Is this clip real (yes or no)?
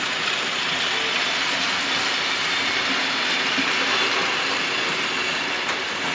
yes